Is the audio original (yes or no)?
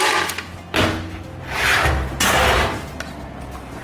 yes